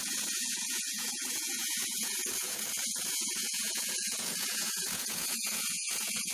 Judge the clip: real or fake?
fake